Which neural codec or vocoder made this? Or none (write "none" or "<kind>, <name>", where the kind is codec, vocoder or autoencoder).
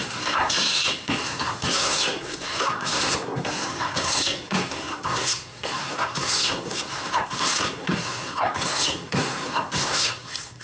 codec, SNAC